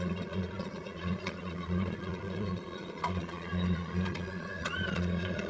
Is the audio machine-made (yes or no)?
yes